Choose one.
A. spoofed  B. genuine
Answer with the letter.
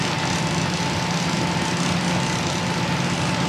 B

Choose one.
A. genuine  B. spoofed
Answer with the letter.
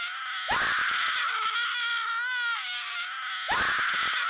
A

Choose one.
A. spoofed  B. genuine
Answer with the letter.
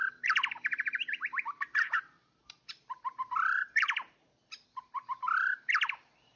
A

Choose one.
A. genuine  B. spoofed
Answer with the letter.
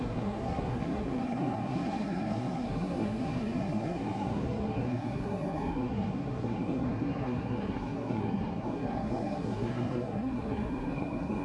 B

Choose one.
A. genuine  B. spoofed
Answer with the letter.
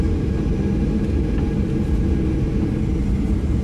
A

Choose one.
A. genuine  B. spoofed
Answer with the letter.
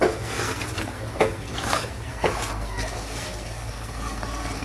B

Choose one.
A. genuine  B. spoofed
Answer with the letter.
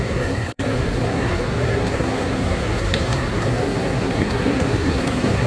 B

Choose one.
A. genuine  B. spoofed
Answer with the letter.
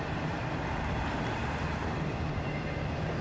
B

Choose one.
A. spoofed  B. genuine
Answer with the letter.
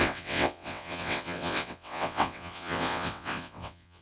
A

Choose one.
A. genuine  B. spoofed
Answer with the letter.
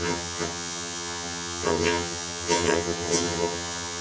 B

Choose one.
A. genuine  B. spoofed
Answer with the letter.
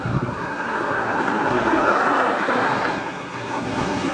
B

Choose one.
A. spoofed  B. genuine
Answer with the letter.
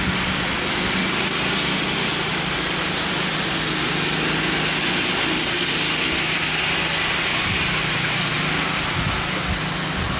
B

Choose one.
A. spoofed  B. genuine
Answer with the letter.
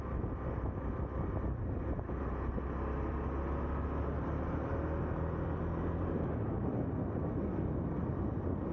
B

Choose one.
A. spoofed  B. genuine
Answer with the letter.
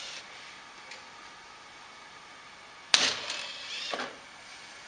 B